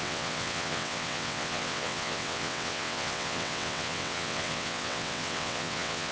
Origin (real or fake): fake